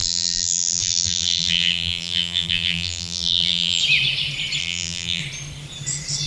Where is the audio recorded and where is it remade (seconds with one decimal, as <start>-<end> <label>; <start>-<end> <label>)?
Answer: 0.0-3.8 remade; 3.8-4.6 recorded; 4.6-5.2 remade; 5.2-6.3 recorded